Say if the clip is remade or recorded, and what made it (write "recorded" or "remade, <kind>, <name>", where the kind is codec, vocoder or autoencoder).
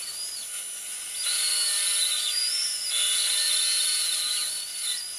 recorded